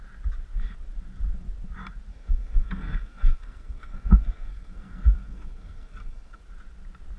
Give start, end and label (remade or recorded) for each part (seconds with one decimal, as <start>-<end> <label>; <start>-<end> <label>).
0.0-2.1 recorded; 2.1-6.4 remade; 6.4-7.2 recorded